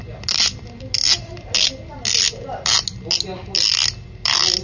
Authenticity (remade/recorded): recorded